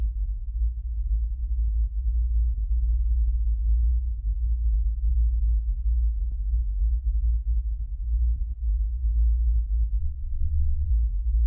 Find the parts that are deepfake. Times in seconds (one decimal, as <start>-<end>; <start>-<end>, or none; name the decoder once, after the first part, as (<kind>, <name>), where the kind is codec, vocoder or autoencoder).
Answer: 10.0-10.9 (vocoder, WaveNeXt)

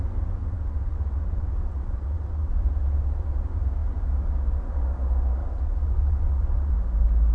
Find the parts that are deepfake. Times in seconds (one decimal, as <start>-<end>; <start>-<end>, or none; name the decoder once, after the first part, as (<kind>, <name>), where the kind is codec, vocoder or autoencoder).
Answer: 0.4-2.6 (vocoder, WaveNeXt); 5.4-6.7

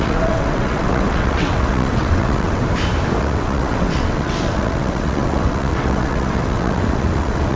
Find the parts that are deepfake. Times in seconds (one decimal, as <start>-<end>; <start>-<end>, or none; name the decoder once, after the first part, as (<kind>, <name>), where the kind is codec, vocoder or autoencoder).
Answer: 0.0-2.6 (vocoder, WaveNeXt); 3.2-7.6

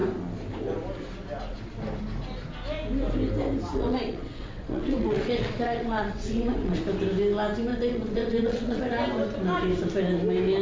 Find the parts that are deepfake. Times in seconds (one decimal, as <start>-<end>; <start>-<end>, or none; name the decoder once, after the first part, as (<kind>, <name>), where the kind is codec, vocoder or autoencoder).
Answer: 3.7-6.8 (vocoder, WaveNeXt); 7.7-8.8

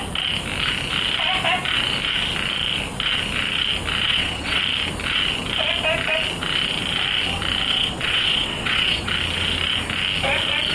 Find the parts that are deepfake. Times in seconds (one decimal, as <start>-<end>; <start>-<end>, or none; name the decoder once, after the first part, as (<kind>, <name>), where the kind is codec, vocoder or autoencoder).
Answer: 4.1-4.6 (vocoder, WaveNeXt); 7.7-9.1